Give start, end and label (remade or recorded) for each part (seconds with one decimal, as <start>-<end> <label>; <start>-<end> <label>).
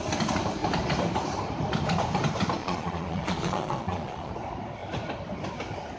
0.0-2.6 recorded; 2.6-4.3 remade; 4.3-6.0 recorded